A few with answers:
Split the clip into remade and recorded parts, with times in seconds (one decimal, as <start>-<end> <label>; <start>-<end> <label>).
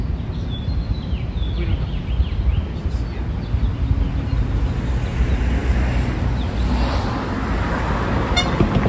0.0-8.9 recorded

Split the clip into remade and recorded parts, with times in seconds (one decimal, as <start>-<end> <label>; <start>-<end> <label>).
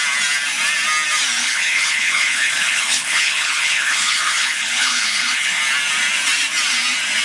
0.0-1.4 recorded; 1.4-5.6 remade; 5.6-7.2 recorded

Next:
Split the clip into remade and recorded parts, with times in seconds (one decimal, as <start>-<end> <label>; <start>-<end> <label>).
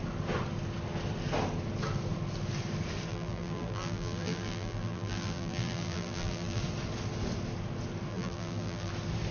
0.0-3.1 recorded; 3.1-6.6 remade; 6.6-8.1 recorded; 8.1-8.9 remade; 8.9-9.3 recorded